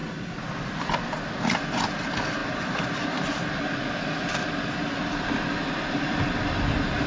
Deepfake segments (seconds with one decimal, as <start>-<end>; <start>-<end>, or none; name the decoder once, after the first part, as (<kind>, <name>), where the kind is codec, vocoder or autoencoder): none